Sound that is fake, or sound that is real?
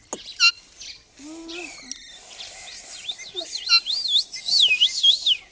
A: real